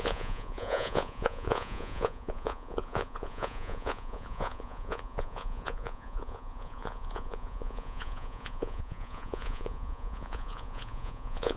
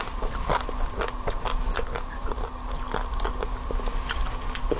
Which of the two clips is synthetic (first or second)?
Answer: first